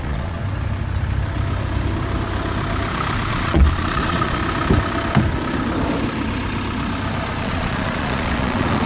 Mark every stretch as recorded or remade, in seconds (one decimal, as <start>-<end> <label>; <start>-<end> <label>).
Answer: 0.0-0.4 remade; 0.4-3.3 recorded; 3.3-4.4 remade; 4.4-7.4 recorded; 7.4-8.9 remade